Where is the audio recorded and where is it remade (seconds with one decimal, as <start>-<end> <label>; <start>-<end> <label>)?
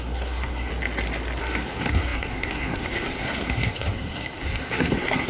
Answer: 0.0-0.7 remade; 0.7-1.4 recorded; 1.4-5.3 remade